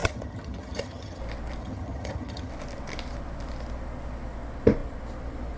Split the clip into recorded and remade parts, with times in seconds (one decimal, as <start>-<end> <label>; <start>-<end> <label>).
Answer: 0.0-1.2 remade; 1.2-1.6 recorded; 1.6-2.5 remade; 2.5-5.6 recorded